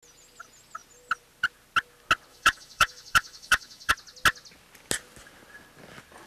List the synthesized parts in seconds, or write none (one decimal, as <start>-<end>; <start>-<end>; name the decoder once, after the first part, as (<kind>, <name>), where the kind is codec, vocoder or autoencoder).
2.3-3.9 (autoencoder, DAC-VAE)

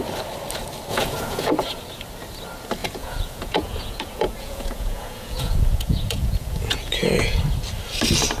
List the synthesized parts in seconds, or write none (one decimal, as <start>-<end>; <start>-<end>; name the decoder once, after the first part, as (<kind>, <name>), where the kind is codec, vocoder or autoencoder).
0.9-1.5 (vocoder, Vocos); 2.8-7.4

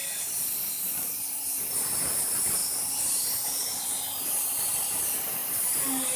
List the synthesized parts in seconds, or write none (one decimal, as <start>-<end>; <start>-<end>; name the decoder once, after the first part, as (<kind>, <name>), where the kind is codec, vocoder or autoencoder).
0.0-1.6 (vocoder, BigVGAN v2)